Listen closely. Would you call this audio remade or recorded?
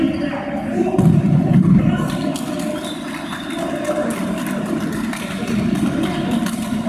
recorded